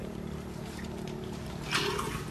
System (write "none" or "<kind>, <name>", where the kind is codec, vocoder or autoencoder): none